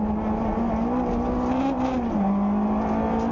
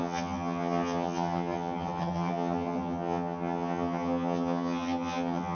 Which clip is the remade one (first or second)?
second